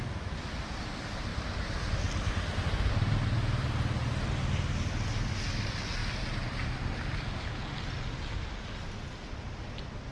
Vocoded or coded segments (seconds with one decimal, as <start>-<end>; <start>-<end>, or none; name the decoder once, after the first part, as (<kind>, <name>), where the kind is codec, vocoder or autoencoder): none